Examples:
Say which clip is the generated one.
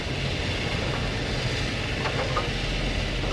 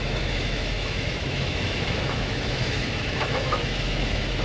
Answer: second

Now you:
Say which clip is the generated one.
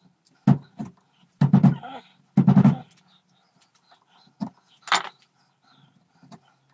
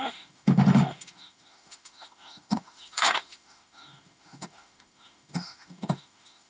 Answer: second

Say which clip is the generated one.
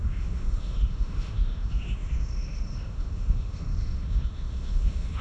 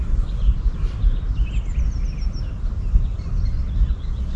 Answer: first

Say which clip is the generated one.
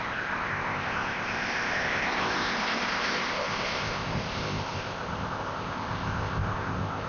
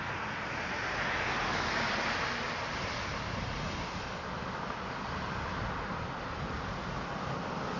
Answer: first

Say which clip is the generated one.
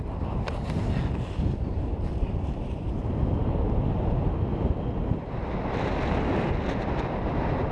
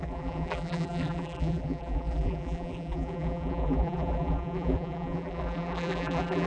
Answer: second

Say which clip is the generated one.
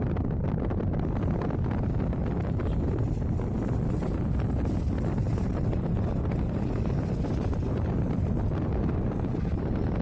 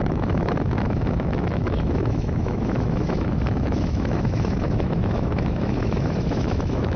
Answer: second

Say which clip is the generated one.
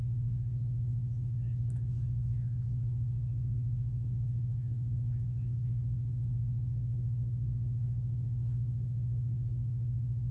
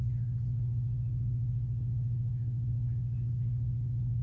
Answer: first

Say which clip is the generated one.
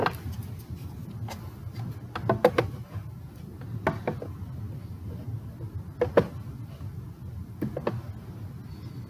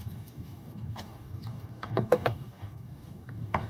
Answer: second